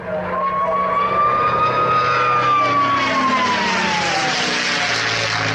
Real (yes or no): yes